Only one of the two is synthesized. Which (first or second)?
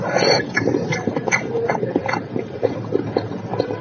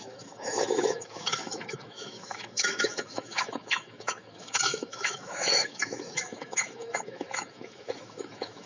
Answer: second